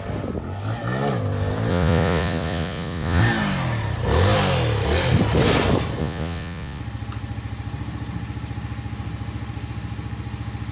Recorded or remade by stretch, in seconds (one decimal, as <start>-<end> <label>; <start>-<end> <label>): 0.0-1.7 recorded; 1.7-3.2 remade; 3.2-6.0 recorded; 6.0-6.8 remade; 6.8-10.7 recorded